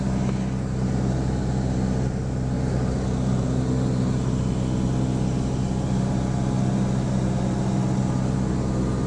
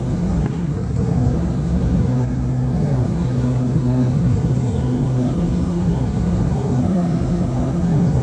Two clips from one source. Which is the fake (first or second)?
second